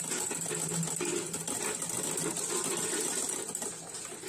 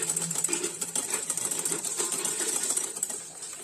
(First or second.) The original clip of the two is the first